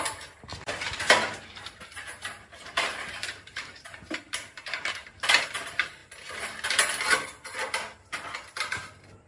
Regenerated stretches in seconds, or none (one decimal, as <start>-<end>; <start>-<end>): 0.0-6.0